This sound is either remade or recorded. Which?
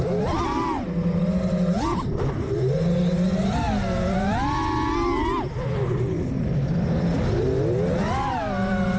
recorded